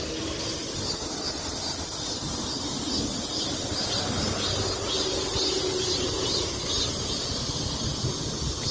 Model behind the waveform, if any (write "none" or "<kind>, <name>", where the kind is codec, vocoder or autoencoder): none